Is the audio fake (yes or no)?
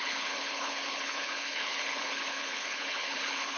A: yes